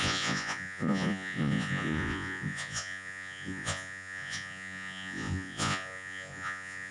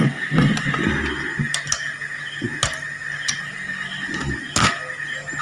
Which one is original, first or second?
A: second